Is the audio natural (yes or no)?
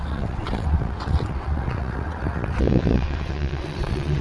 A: no